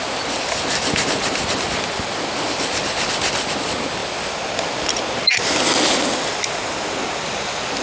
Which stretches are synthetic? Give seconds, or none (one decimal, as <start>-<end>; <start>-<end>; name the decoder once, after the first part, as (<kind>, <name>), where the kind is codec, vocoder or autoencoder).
none